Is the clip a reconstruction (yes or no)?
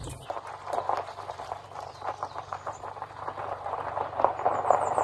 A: yes